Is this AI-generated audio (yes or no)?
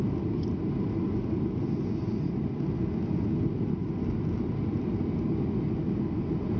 no